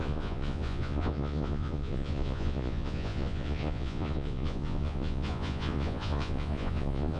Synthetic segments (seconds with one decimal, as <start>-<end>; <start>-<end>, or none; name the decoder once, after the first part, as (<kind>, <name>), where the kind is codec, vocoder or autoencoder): 0.0-7.2 (vocoder, Vocos)